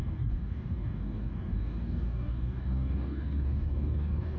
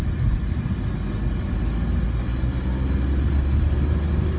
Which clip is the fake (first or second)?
first